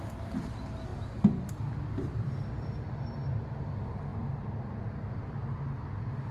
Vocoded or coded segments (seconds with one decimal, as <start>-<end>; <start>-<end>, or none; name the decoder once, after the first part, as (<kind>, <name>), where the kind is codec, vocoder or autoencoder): 0.9-2.7 (vocoder, BigVGAN v2)

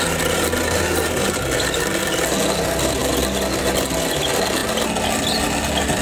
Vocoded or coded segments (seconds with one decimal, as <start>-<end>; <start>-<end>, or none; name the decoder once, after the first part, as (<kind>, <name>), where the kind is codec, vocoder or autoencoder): none

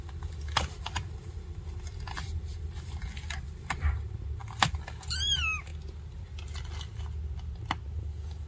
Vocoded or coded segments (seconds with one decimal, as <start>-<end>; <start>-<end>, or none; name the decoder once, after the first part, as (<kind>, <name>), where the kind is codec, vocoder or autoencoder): none

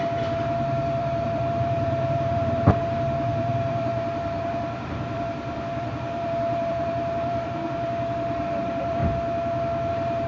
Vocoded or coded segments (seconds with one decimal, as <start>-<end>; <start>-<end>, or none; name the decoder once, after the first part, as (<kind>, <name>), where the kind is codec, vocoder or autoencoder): 0.0-9.0 (vocoder, BigVGAN v2); 9.9-10.3